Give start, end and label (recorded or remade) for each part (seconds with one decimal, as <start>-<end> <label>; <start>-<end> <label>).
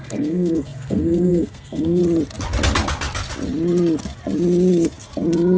0.0-2.0 remade; 2.0-5.6 recorded